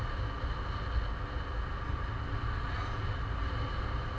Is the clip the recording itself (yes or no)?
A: yes